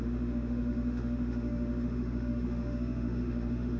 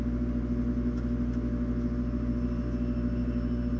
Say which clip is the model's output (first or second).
first